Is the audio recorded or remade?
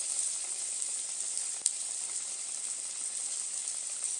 remade